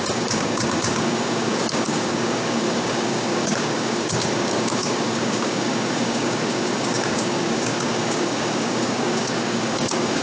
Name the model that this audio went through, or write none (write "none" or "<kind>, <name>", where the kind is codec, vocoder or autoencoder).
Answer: codec, DAC